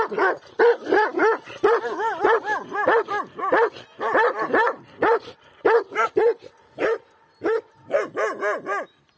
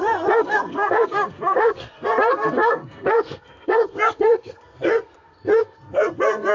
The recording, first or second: first